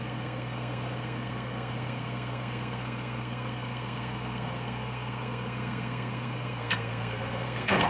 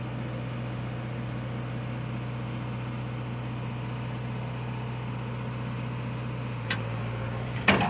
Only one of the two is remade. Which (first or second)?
first